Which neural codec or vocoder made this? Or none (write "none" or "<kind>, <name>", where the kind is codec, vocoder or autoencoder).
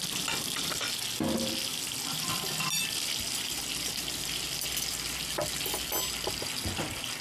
none